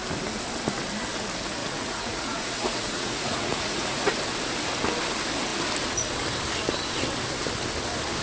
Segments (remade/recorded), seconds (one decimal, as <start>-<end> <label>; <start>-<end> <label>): 0.0-1.6 recorded; 1.6-4.1 remade; 4.1-8.2 recorded